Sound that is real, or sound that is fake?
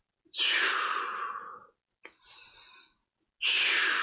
real